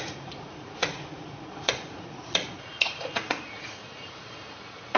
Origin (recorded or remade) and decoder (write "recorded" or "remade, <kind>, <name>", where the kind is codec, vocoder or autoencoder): remade, vocoder, Vocos